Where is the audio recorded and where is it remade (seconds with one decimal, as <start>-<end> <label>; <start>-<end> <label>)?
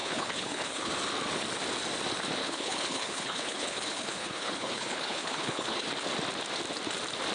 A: 0.0-0.9 remade; 0.9-2.4 recorded; 2.4-5.9 remade; 5.9-7.3 recorded